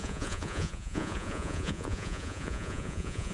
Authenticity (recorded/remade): remade